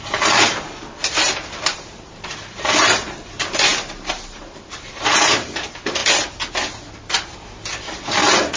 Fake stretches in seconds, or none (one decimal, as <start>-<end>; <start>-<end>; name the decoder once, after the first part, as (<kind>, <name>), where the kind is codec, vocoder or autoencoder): 0.0-6.0 (vocoder, BigVGAN v2); 7.1-8.6